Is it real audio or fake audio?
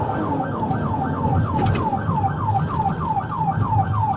real